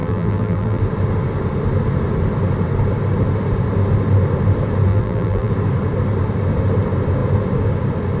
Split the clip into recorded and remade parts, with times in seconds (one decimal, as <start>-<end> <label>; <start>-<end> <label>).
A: 0.0-0.8 remade; 0.8-4.9 recorded; 4.9-5.5 remade; 5.5-8.2 recorded